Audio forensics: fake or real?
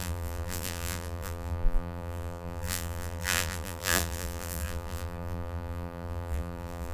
fake